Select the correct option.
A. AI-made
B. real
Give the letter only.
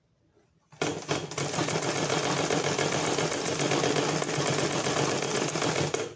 B